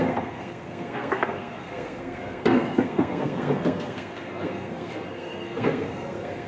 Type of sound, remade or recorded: remade